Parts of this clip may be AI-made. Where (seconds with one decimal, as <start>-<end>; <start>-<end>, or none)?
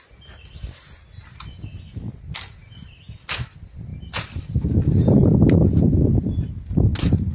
none